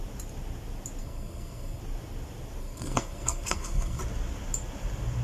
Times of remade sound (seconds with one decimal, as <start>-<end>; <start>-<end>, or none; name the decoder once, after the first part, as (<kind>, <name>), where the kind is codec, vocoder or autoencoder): 1.0-1.8 (codec, SNAC); 2.6-4.0